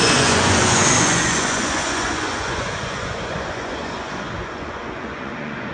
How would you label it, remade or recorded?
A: remade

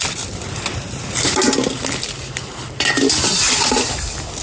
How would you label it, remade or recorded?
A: recorded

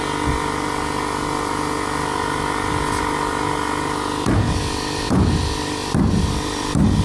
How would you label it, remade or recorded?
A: recorded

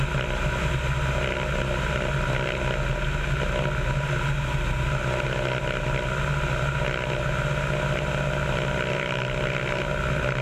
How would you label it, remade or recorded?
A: recorded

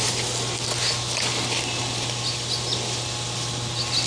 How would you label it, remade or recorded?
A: recorded